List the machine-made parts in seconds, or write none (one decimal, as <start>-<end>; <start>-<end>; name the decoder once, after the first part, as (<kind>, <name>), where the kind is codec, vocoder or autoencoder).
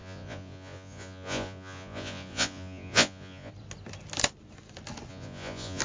0.0-3.5 (vocoder, Vocos); 5.1-5.8